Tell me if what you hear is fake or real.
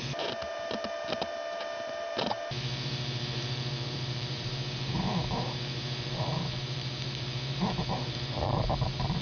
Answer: fake